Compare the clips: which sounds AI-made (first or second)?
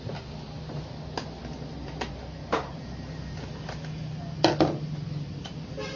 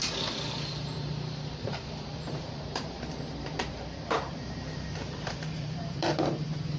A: second